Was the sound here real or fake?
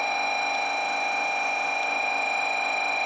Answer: real